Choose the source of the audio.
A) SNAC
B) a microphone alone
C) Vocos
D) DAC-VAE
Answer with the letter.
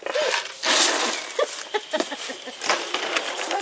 B